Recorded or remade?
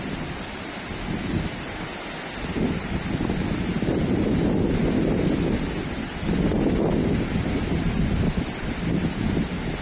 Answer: recorded